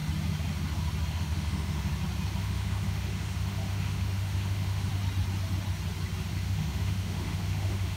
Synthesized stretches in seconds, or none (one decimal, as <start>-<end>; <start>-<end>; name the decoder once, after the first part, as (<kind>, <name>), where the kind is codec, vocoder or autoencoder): 1.1-1.9 (autoencoder, DAC-VAE); 2.4-4.9; 6.3-8.0